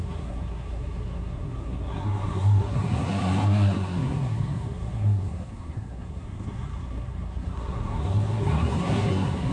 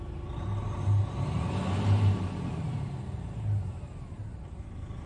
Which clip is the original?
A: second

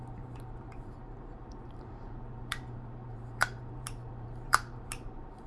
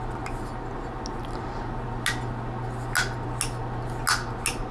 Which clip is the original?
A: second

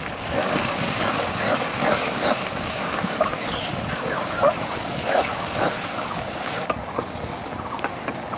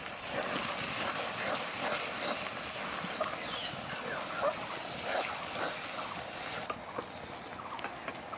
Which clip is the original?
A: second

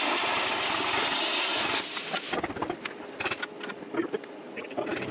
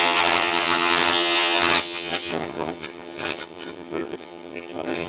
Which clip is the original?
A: first